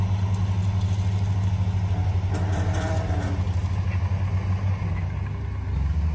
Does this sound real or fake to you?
real